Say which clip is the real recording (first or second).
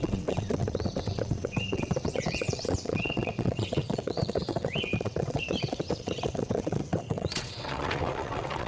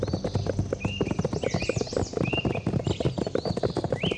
second